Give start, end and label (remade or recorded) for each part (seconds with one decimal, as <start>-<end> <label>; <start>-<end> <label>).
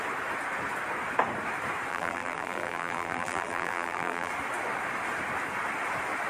0.0-1.9 recorded; 1.9-4.3 remade; 4.3-6.3 recorded